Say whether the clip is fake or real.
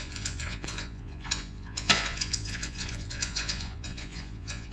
fake